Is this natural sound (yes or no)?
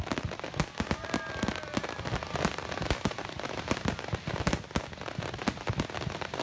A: yes